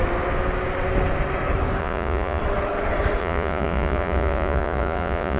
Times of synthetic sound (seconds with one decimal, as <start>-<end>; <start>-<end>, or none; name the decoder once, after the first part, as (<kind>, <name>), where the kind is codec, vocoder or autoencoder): 1.8-2.4 (vocoder, Vocos); 3.2-5.4